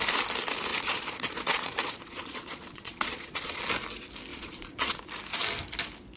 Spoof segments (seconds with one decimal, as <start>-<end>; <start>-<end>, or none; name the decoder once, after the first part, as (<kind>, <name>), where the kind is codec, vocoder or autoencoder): 0.7-3.6 (vocoder, Vocos); 4.3-5.0